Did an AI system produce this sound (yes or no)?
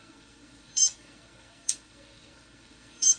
yes